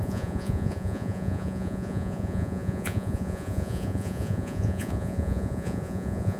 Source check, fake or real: fake